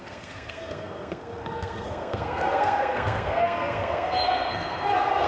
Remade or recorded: remade